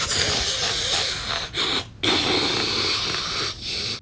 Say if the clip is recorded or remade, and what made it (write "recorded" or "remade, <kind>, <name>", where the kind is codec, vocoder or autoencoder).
recorded